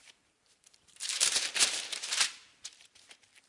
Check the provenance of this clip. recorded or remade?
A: remade